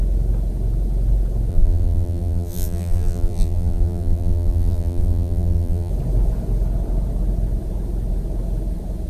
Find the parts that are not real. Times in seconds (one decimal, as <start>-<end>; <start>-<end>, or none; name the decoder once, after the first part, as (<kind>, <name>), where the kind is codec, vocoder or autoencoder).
1.5-5.9 (vocoder, BigVGAN v2)